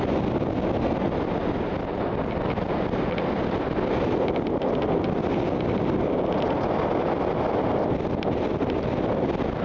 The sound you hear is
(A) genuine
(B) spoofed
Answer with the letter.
A